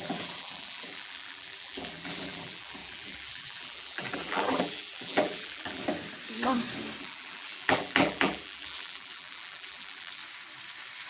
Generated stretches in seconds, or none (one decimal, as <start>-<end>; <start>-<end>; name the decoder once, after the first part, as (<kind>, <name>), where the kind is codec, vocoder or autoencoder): 0.0-5.8 (vocoder, BigVGAN v2); 7.0-10.2